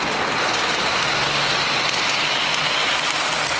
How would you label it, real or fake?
real